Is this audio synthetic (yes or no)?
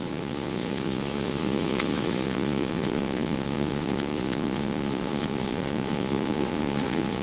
yes